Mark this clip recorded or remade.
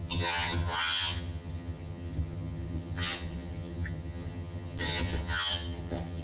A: remade